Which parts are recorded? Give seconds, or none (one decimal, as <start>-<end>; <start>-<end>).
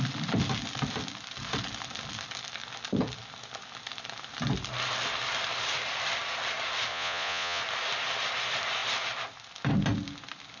0.0-6.9; 7.6-10.6